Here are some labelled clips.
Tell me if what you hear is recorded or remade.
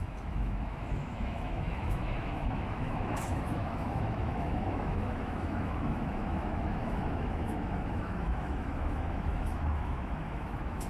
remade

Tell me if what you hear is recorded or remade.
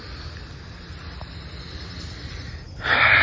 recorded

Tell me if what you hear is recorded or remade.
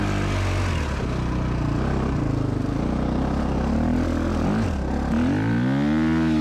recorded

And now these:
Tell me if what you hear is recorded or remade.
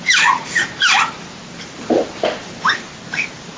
recorded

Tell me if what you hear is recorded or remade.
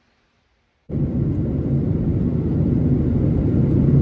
recorded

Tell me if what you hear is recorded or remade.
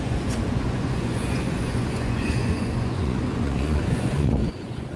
remade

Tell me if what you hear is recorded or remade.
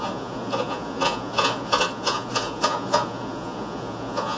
remade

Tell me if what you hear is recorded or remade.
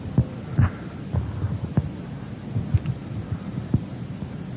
remade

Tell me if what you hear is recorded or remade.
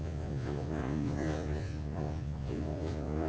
remade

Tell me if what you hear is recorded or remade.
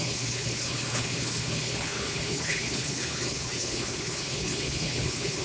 remade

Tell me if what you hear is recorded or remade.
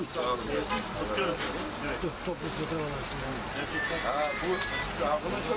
recorded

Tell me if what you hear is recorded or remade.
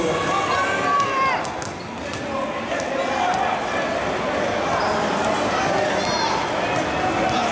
recorded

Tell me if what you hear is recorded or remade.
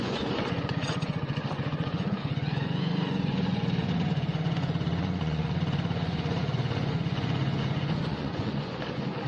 remade